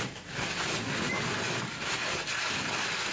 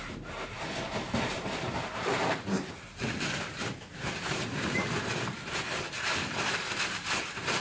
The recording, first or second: first